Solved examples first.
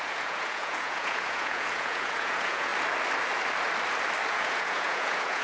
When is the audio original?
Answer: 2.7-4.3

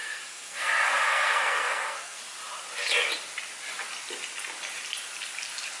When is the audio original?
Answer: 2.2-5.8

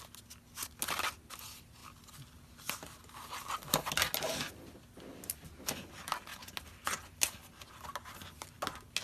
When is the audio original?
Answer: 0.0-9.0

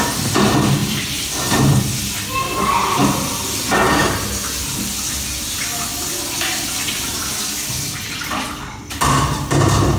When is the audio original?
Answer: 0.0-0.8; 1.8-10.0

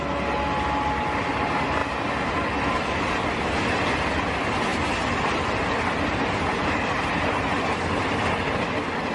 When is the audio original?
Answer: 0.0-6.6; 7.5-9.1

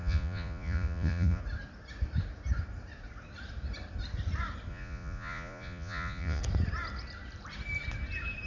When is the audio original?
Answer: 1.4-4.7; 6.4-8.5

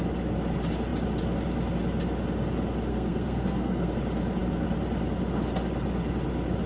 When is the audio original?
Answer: 0.0-2.9; 3.9-6.7

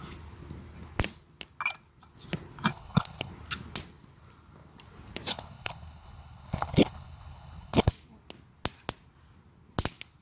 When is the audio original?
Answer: 0.0-2.7; 3.3-5.3; 7.9-10.2